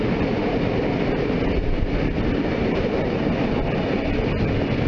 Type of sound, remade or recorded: recorded